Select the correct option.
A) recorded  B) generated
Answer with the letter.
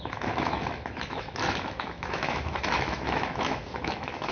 B